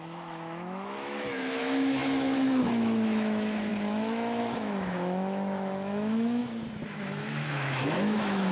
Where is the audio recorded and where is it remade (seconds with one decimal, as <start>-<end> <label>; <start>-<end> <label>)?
0.0-6.4 remade; 6.4-7.0 recorded; 7.0-8.5 remade